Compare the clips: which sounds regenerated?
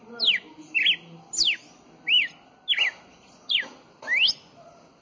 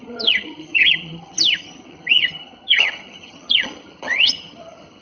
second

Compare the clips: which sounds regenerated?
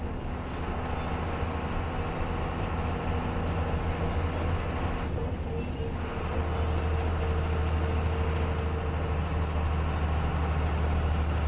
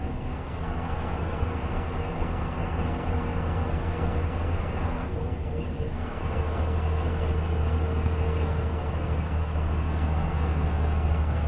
second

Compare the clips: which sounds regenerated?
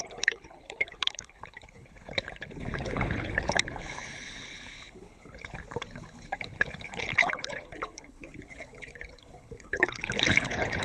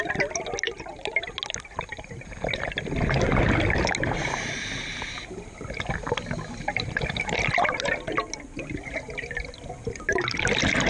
first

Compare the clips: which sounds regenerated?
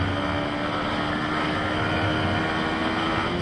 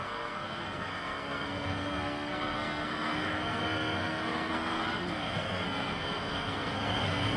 second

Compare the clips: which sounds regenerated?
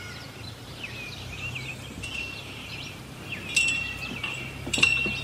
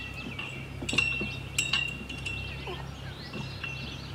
first